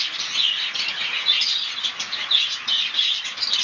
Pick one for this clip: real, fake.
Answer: real